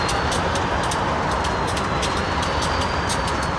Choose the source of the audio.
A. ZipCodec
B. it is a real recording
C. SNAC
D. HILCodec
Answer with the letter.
B